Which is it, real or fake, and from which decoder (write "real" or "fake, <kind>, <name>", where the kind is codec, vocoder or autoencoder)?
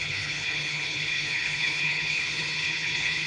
fake, codec, HILCodec